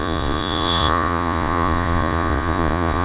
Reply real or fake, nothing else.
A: fake